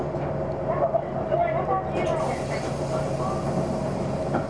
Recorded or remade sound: recorded